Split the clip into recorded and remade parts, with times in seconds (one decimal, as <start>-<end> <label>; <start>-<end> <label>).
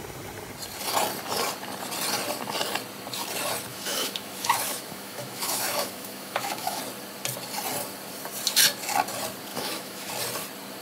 0.0-3.7 recorded; 3.7-6.8 remade; 6.8-9.5 recorded; 9.5-10.1 remade; 10.1-10.8 recorded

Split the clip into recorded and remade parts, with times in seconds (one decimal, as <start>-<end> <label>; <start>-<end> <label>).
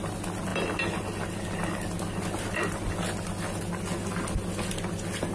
0.0-5.3 recorded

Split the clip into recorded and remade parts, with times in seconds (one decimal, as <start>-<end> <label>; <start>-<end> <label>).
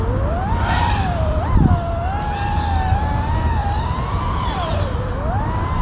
0.0-5.8 recorded